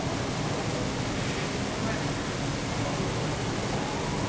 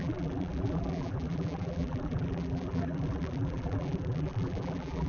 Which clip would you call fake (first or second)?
second